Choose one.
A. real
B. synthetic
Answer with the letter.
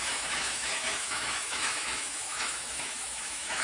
B